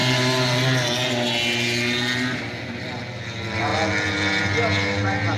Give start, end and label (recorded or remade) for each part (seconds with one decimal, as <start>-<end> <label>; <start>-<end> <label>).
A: 0.0-5.4 recorded